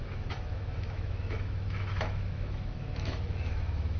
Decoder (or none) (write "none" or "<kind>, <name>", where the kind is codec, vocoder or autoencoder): autoencoder, DAC-VAE